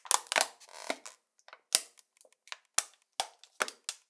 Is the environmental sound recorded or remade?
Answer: recorded